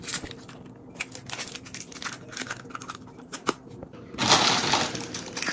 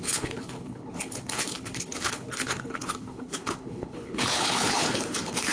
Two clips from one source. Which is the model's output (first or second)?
second